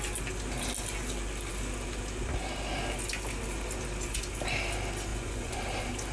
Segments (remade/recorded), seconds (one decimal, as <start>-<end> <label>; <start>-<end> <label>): 0.0-5.1 recorded; 5.1-5.6 remade; 5.6-6.1 recorded